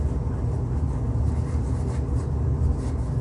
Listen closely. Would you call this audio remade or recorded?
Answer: recorded